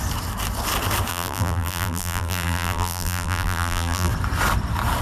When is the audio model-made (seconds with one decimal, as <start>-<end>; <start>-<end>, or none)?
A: 1.1-4.1